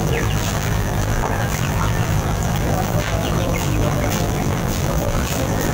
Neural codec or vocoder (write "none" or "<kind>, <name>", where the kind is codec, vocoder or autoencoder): vocoder, BigVGAN v2